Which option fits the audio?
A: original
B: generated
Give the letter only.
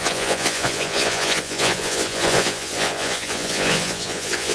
B